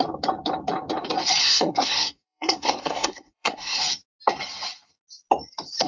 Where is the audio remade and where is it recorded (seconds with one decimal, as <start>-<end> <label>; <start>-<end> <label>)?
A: 0.0-1.4 recorded; 1.4-3.8 remade; 3.8-5.9 recorded